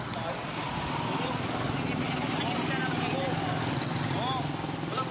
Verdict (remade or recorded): recorded